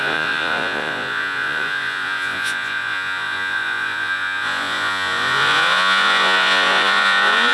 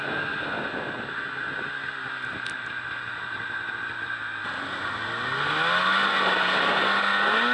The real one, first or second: second